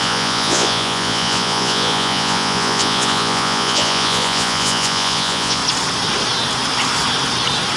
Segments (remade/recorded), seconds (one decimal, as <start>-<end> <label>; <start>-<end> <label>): 0.0-5.6 remade; 5.6-7.8 recorded

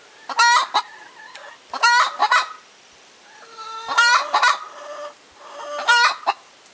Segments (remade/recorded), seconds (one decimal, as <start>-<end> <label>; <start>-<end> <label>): 0.0-6.7 recorded

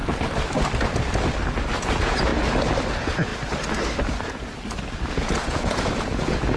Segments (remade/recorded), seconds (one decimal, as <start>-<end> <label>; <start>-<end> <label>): 0.0-1.8 recorded; 1.8-2.3 remade; 2.3-2.9 recorded; 2.9-3.3 remade; 3.3-5.1 recorded; 5.1-6.6 remade

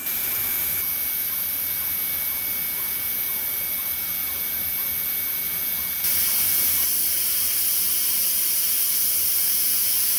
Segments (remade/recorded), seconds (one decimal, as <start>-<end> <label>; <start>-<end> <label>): 0.0-9.4 recorded; 9.4-10.2 remade

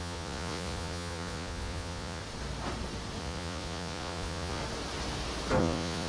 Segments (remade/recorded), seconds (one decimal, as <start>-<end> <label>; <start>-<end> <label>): 0.0-2.2 remade; 2.2-3.2 recorded; 3.2-4.6 remade; 4.6-5.6 recorded; 5.6-6.1 remade

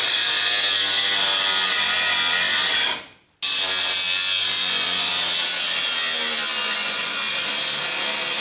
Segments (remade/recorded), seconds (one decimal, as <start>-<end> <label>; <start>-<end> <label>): 0.0-4.4 recorded; 4.4-5.1 remade; 5.1-6.6 recorded; 6.6-7.3 remade; 7.3-8.4 recorded